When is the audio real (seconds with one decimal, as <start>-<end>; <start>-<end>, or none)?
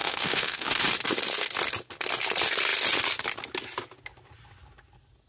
0.8-5.3